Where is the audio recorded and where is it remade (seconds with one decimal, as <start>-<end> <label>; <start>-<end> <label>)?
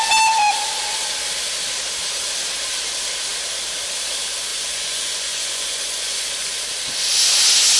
0.0-4.5 recorded; 4.5-6.6 remade; 6.6-7.8 recorded